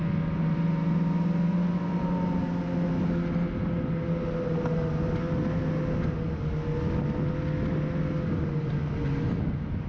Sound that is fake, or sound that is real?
real